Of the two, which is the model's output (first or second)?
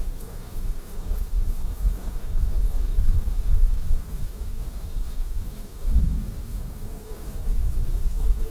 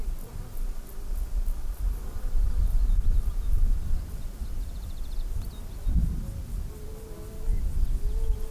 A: first